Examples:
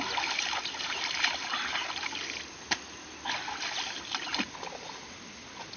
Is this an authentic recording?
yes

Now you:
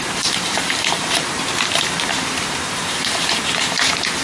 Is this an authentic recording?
no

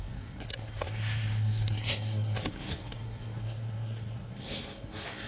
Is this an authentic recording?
no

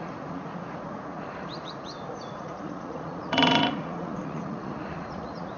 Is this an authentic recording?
no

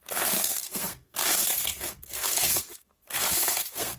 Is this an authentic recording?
no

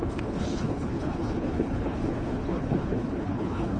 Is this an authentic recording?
no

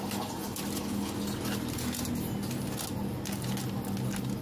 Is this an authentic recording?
yes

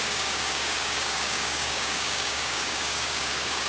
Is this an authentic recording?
no